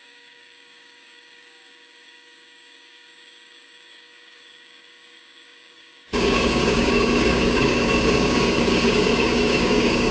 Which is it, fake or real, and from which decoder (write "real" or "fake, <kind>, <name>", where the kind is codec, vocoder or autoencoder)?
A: fake, codec, DAC